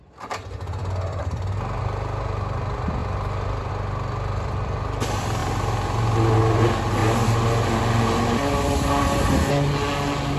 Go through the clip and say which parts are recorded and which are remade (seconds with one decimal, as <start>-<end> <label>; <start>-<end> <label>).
0.0-3.0 recorded; 3.0-3.7 remade; 3.7-10.4 recorded